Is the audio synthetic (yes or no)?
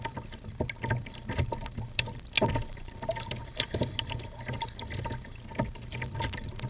no